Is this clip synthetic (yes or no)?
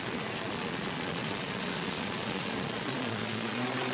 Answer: yes